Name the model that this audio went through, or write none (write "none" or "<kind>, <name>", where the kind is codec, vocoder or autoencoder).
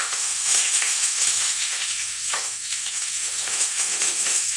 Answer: autoencoder, DAC-VAE